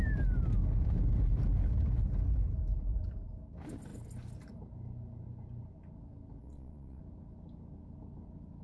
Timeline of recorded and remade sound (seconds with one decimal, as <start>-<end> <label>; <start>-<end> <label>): 0.0-6.4 recorded; 6.4-7.0 remade; 7.0-8.6 recorded